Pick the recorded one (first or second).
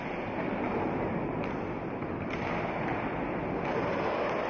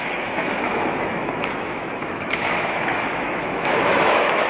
first